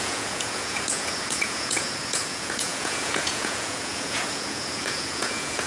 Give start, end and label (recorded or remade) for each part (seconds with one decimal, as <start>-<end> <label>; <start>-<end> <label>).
0.0-5.7 remade